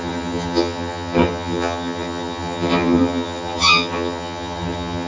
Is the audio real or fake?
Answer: fake